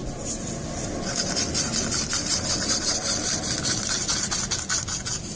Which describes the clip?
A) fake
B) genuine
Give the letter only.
B